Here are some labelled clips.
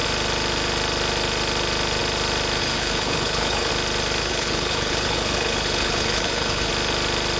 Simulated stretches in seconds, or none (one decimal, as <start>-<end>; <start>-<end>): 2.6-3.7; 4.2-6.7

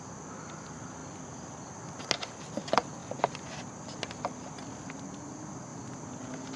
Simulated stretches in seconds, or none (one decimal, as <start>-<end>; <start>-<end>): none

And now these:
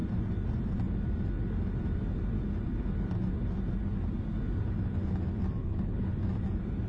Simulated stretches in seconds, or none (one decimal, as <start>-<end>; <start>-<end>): 5.6-6.1

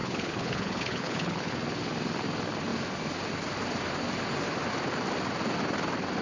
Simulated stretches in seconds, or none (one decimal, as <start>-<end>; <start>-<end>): 0.0-1.5

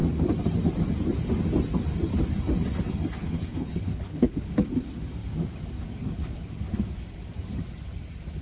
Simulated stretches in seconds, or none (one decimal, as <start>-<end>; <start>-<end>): 3.2-4.5

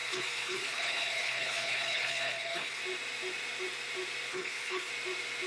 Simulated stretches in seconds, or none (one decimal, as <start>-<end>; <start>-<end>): 0.0-2.8; 4.3-4.9

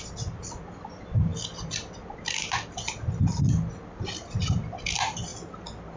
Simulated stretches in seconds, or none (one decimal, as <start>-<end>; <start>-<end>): none